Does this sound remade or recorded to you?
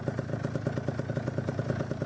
recorded